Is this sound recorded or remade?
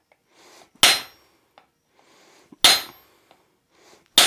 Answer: recorded